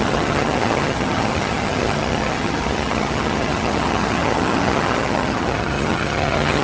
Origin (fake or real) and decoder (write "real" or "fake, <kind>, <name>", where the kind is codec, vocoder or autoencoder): fake, vocoder, HiFi-GAN